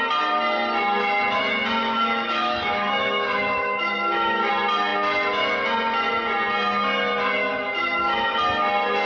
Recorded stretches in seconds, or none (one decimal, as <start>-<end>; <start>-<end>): 0.0-1.8; 4.5-7.4; 8.4-9.1